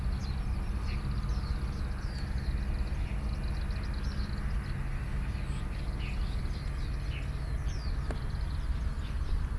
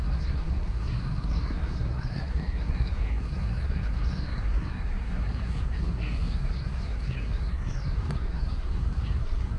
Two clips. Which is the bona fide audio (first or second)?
first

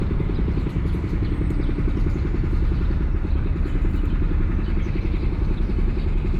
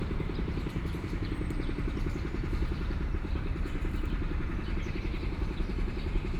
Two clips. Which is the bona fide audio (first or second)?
first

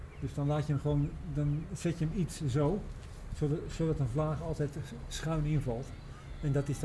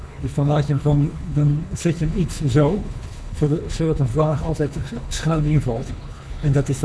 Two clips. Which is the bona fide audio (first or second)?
first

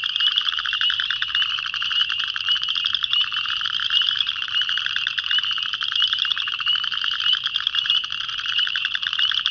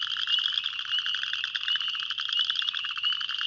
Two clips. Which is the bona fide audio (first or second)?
second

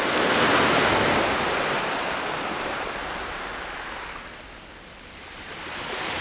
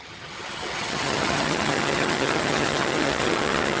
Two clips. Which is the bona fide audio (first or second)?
first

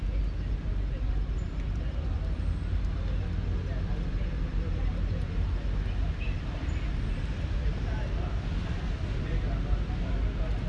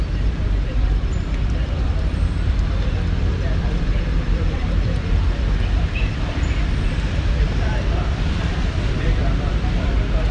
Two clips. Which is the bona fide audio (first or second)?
first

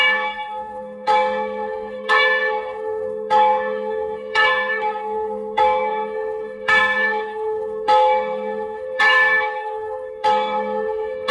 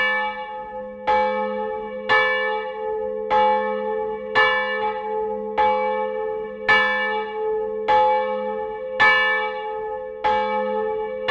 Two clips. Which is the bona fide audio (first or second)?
second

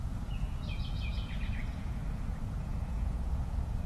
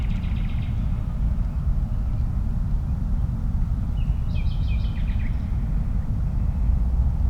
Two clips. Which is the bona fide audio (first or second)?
second